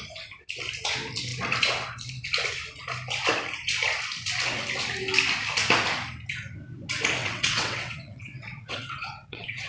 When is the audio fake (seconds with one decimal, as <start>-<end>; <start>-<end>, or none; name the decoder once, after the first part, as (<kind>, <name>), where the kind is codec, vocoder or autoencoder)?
7.2-9.7 (vocoder, WaveNeXt)